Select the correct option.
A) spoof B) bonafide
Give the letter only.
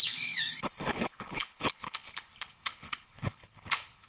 A